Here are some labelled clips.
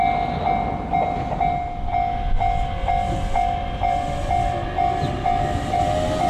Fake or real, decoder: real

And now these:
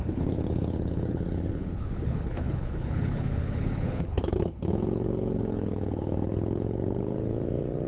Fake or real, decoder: fake, codec, HILCodec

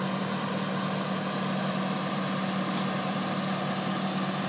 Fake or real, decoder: real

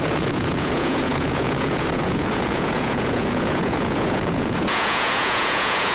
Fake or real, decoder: fake, vocoder, Vocos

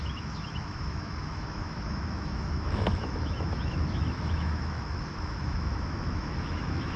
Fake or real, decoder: fake, autoencoder, DAC-VAE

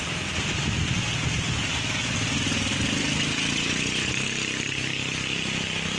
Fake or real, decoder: real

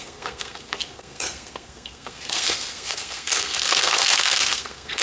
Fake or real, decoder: fake, codec, SNAC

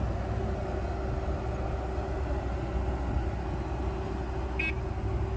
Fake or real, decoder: real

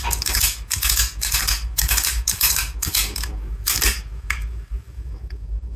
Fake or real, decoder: fake, codec, DAC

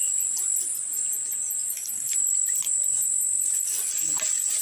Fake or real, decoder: real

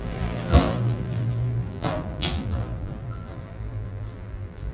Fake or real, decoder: fake, vocoder, BigVGAN v2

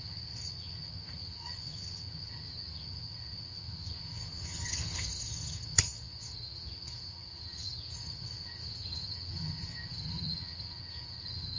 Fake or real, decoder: fake, vocoder, HiFi-GAN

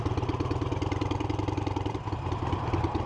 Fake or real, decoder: fake, vocoder, BigVGAN v2